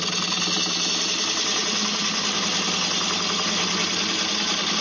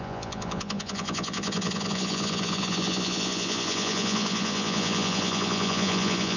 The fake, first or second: second